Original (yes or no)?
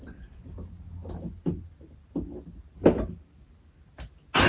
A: yes